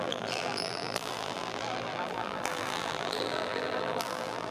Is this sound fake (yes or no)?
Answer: yes